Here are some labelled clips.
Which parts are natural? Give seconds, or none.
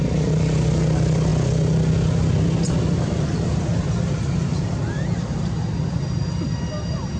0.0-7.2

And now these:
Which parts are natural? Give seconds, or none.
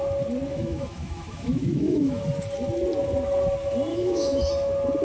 0.0-0.5; 2.2-3.9; 4.5-5.0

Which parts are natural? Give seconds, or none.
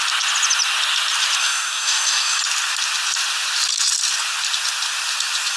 0.0-1.4; 2.4-5.6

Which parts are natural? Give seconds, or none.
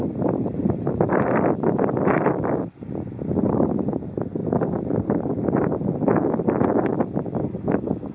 2.7-4.4; 7.4-8.1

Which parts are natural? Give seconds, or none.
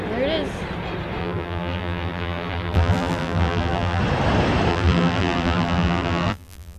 0.0-1.2; 4.0-4.7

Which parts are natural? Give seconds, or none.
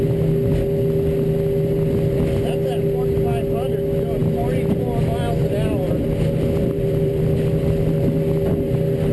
0.0-6.6; 7.2-9.1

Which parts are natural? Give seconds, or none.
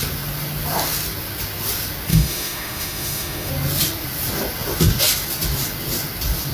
0.0-2.1; 3.5-6.5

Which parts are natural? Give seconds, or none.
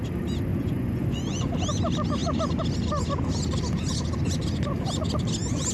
0.0-0.5; 1.5-5.7